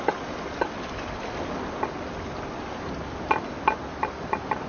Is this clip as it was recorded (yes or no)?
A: yes